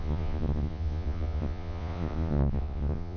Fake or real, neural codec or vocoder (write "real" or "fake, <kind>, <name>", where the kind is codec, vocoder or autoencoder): fake, vocoder, Vocos